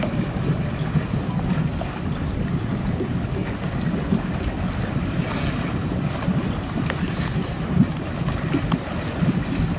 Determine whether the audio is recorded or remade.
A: recorded